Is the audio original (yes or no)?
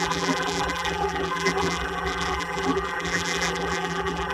no